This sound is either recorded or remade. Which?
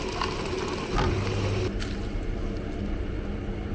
recorded